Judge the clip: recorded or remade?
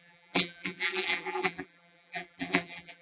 remade